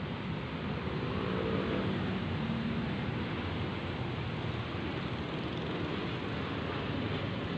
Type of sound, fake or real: real